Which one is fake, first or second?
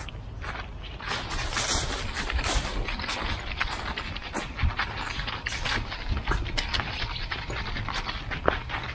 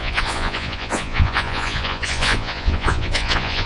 second